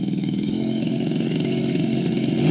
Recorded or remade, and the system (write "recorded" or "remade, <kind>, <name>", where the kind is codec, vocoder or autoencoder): remade, autoencoder, DAC-VAE